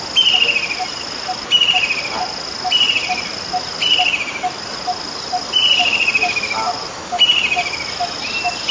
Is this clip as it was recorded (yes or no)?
yes